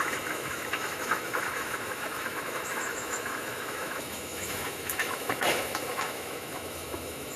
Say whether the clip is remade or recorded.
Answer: remade